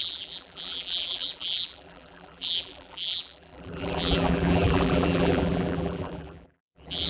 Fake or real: fake